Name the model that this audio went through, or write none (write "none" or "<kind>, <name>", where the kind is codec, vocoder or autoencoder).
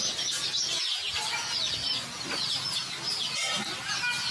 none